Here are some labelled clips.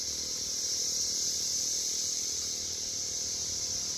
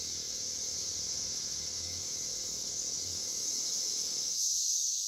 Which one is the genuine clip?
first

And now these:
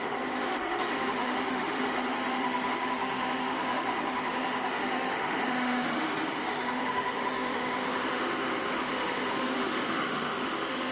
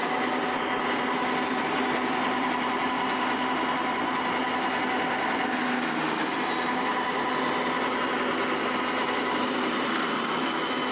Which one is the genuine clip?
second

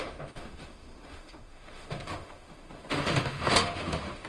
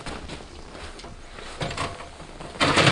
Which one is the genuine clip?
second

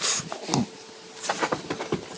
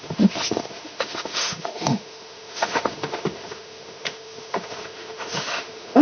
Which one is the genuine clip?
first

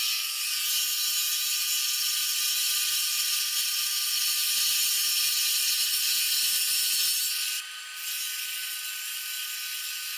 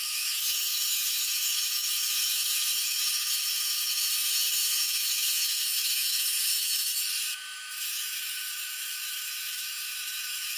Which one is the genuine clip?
first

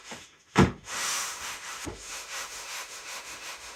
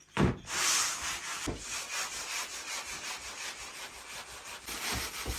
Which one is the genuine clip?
second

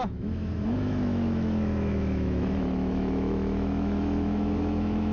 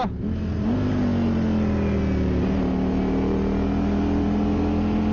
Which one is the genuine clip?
second